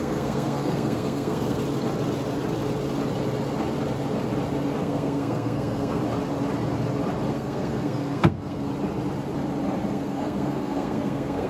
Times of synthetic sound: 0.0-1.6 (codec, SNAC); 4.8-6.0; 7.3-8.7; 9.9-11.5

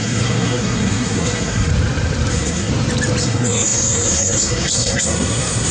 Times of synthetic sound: 0.0-1.7 (codec, SNAC); 2.3-2.7; 3.2-5.7

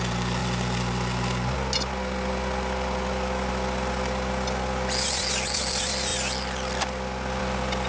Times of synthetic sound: none

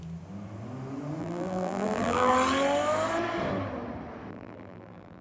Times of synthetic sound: 1.2-2.3 (vocoder, BigVGAN v2); 4.3-5.2

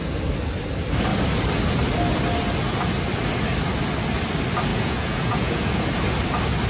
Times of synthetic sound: 4.7-5.7 (vocoder, Vocos)